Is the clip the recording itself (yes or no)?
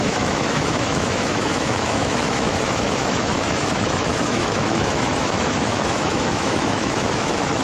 no